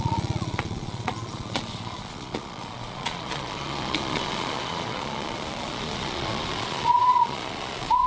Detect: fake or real fake